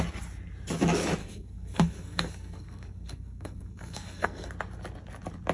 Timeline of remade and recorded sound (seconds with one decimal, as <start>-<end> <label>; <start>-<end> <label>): 0.0-1.2 recorded; 1.2-4.5 remade; 4.5-5.5 recorded

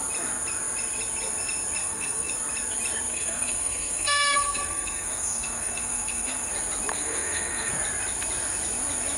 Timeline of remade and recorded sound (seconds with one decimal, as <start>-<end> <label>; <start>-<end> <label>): 0.0-1.8 recorded; 1.8-2.3 remade; 2.3-3.1 recorded; 3.1-6.5 remade; 6.5-6.9 recorded; 6.9-7.7 remade; 7.7-9.2 recorded